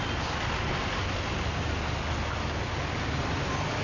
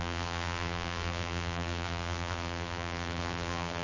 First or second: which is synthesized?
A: second